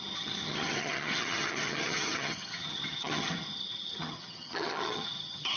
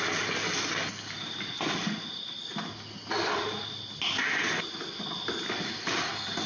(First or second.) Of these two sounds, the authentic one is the second